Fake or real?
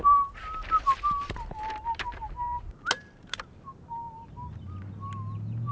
real